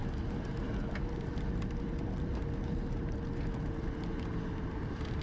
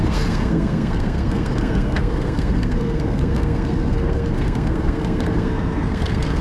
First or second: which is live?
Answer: first